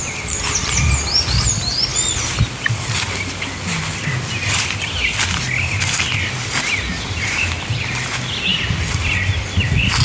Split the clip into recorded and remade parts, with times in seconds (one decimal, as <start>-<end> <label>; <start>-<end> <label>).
0.0-10.0 recorded